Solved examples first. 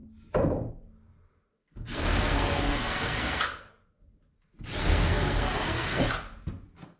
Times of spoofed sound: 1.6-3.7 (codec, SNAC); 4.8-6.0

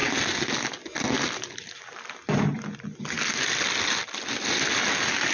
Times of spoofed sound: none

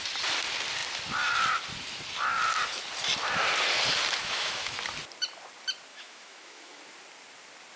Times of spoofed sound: 4.2-4.8 (autoencoder, DAC-VAE); 5.9-6.8